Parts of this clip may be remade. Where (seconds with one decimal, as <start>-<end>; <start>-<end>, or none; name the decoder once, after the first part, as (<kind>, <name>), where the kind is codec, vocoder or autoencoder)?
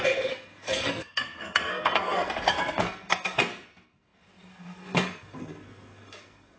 0.0-6.6 (codec, SNAC)